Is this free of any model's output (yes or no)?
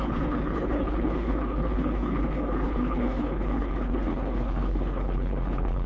no